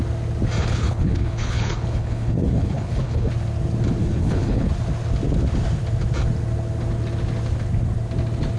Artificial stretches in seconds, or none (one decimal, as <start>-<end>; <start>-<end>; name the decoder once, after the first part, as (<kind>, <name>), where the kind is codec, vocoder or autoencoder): 0.6-3.3 (codec, HILCodec); 4.0-4.7